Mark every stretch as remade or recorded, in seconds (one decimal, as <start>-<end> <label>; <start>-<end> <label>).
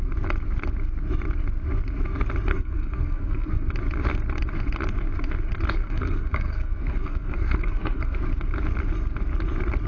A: 0.0-2.5 recorded; 2.5-3.7 remade; 3.7-5.8 recorded; 5.8-8.2 remade; 8.2-9.9 recorded